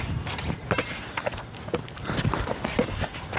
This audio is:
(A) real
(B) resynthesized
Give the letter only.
A